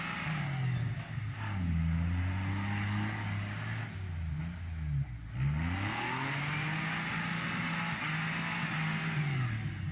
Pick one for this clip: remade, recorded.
recorded